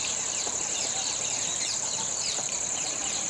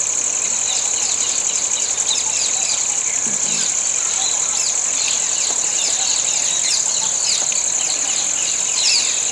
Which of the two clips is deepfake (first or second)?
first